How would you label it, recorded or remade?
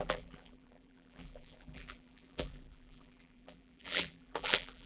remade